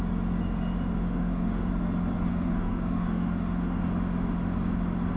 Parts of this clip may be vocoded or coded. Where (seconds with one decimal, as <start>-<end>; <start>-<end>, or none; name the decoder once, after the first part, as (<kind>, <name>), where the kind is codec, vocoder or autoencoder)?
1.0-1.7 (autoencoder, DAC-VAE); 2.3-3.8